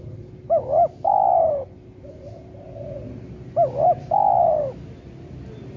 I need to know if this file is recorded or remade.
recorded